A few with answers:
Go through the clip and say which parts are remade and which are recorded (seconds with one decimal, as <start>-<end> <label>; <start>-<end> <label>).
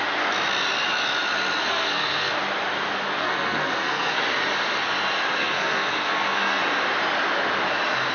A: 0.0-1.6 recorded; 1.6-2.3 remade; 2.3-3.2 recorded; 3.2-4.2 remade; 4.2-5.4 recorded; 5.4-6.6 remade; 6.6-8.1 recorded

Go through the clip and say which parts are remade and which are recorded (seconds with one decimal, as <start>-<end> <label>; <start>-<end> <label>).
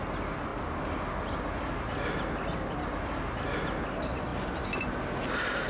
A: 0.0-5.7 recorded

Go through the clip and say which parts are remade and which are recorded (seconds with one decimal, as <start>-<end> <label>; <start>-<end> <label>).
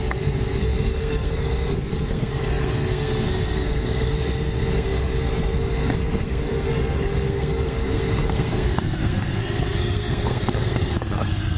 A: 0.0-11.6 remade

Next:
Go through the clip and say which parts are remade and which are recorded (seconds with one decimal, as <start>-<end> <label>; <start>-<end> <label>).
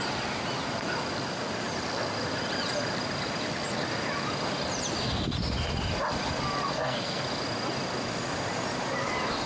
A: 0.0-6.7 recorded; 6.7-7.2 remade; 7.2-9.5 recorded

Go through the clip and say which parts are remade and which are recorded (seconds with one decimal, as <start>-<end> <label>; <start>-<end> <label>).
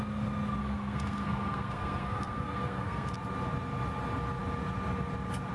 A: 0.0-0.6 recorded; 0.6-3.1 remade; 3.1-5.5 recorded